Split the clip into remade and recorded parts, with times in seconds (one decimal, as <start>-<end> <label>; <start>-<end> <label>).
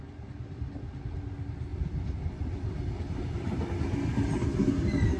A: 0.0-5.2 recorded